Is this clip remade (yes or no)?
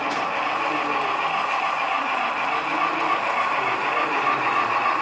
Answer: no